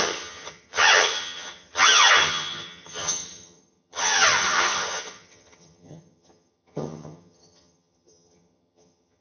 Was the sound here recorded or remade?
remade